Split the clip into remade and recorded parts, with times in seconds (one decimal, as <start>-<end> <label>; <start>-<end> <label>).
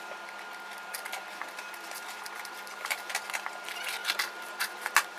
0.0-0.9 recorded; 0.9-3.1 remade; 3.1-4.0 recorded; 4.0-5.2 remade